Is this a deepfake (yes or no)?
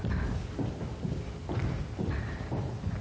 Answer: no